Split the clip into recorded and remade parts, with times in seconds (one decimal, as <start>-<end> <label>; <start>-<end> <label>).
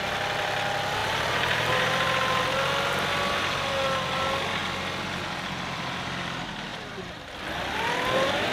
0.0-1.0 recorded; 1.0-2.4 remade; 2.4-6.7 recorded; 6.7-7.3 remade; 7.3-8.5 recorded